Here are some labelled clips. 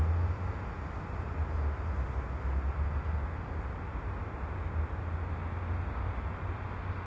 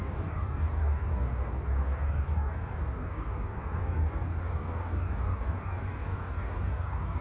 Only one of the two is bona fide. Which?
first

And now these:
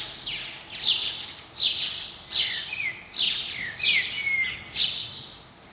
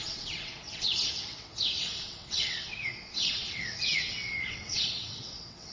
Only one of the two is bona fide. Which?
first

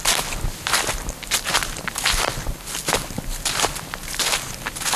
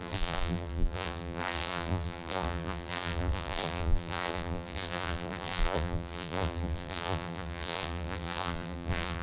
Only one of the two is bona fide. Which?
first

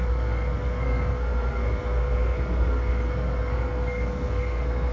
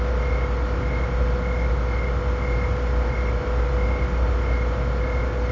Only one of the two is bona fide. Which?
second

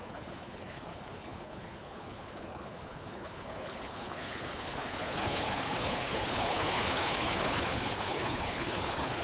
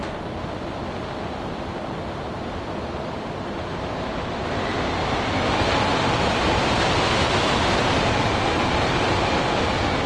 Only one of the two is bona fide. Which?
second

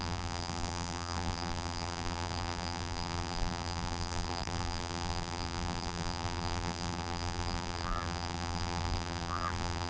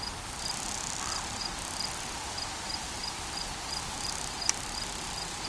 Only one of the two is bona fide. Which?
second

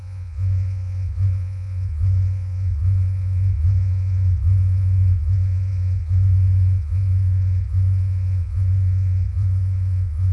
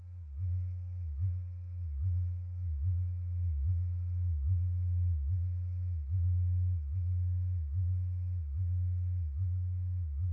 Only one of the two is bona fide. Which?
second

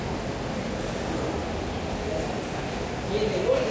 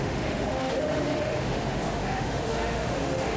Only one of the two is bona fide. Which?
first